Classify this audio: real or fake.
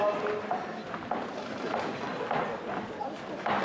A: real